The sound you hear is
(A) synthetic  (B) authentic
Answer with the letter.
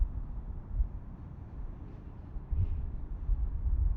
A